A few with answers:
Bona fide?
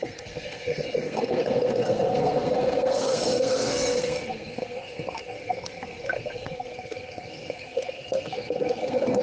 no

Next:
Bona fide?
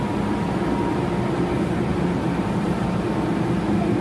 yes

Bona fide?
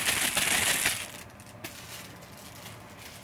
yes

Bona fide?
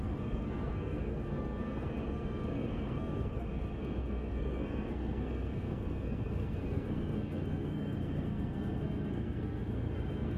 no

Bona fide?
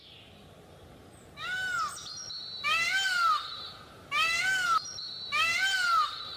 yes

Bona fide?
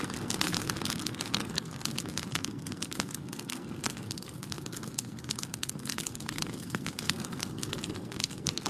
no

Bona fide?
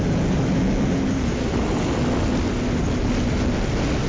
yes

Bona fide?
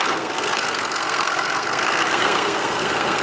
no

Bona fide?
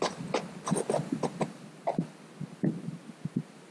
yes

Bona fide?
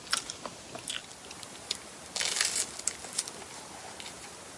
yes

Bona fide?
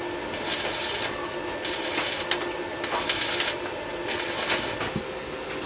yes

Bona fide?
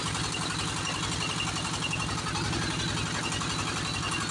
yes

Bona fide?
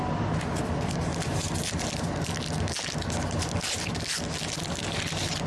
yes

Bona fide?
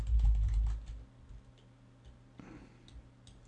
yes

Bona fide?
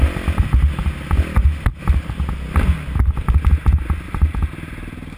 yes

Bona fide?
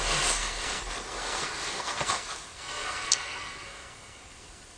no